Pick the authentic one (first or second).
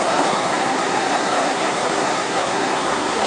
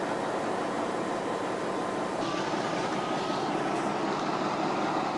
second